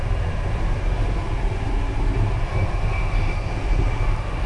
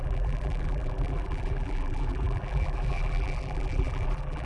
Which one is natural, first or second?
first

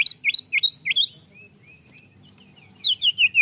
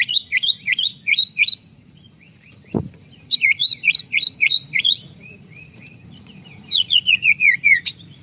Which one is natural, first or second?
first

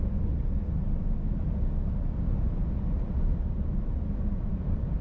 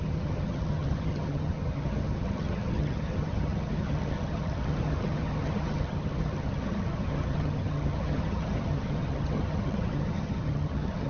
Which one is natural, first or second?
first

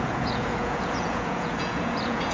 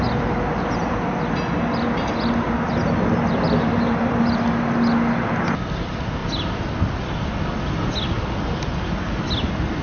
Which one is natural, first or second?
second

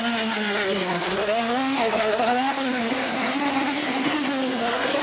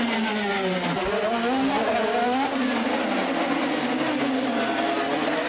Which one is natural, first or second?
second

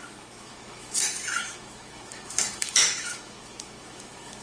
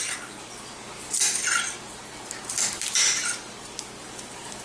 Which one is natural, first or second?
second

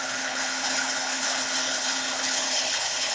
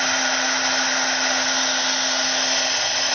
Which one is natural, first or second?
second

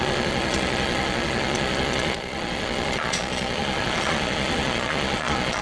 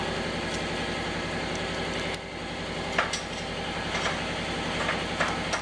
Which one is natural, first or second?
second